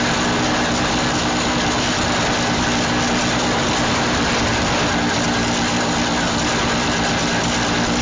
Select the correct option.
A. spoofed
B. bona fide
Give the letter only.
B